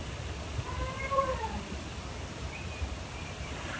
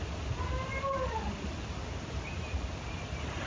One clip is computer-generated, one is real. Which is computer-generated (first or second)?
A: first